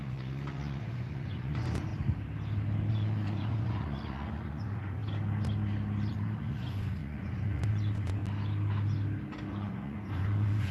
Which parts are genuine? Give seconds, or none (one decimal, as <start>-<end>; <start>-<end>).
1.9-2.9; 5.0-6.1; 8.2-9.5